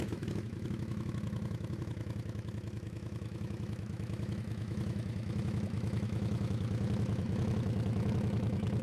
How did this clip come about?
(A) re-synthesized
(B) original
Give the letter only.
A